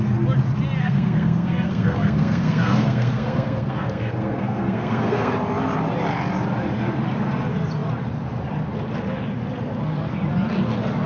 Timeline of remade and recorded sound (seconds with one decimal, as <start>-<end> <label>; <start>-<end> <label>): 0.0-0.8 recorded; 0.8-5.3 remade; 5.3-11.1 recorded